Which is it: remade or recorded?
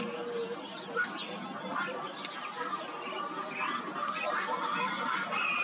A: recorded